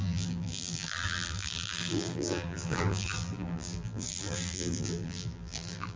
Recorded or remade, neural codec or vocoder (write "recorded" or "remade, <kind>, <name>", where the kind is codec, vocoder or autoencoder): remade, vocoder, BigVGAN v2